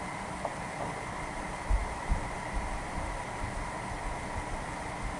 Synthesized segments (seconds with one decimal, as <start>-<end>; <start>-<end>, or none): 0.5-1.4; 1.8-3.6